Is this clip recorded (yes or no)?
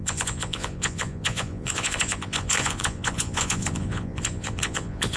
no